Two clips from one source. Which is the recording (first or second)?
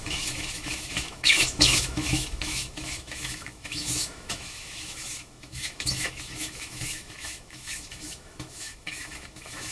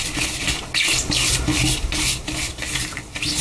second